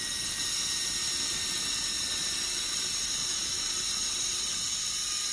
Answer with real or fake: real